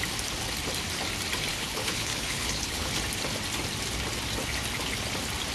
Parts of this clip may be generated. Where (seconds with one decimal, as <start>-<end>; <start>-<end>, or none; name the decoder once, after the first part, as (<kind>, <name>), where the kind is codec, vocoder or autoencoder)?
1.5-2.9 (codec, HILCodec)

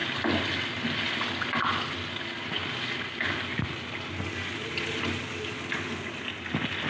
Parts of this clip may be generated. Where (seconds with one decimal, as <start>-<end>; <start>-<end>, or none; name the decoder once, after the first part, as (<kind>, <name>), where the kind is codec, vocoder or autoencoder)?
none

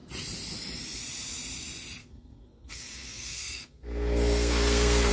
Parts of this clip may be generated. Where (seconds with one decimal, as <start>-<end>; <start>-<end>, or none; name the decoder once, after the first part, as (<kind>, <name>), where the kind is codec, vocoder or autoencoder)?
2.0-5.1 (codec, SNAC)

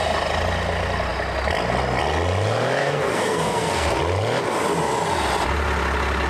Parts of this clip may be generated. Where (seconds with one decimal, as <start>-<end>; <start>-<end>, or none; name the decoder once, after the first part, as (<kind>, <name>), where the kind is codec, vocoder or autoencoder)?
2.8-4.0 (codec, SNAC)

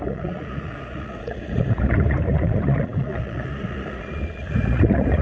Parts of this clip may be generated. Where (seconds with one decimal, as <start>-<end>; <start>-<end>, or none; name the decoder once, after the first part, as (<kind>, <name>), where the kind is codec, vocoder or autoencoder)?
0.0-5.2 (vocoder, Vocos)

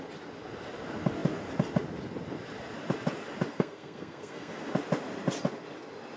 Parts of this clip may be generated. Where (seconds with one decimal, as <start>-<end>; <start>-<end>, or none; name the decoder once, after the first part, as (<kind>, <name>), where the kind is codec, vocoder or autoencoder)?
3.5-4.5 (codec, SNAC)

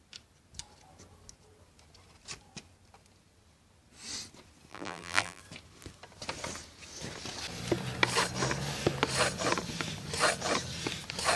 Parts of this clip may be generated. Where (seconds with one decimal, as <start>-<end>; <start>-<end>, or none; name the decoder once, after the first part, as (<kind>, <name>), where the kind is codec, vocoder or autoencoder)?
4.7-5.4 (vocoder, BigVGAN v2)

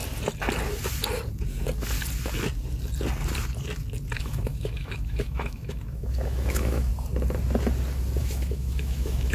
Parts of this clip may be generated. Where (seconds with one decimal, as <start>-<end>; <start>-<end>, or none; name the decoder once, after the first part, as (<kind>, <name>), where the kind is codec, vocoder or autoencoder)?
4.2-6.9 (autoencoder, DAC-VAE); 8.2-9.3